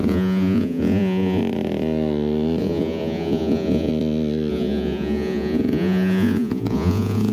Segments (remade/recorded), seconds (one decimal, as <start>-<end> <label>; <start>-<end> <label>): 0.0-1.4 remade; 1.4-2.6 recorded; 2.6-3.9 remade; 3.9-4.5 recorded; 4.5-7.3 remade